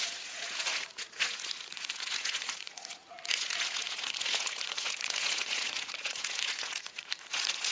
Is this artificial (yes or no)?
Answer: yes